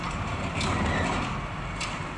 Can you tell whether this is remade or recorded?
recorded